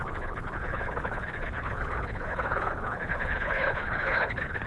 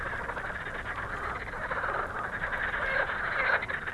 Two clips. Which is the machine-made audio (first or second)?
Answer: first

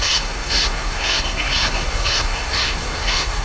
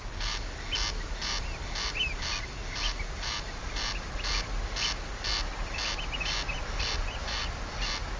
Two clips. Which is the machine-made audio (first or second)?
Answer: first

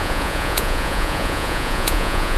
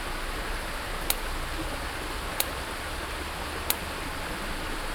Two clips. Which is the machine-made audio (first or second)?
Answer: first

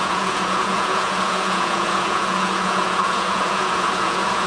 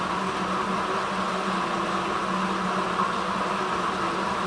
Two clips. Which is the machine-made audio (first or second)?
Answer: first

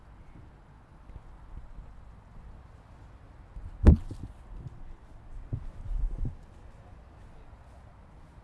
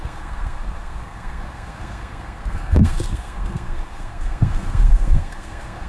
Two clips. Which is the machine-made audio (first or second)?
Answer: second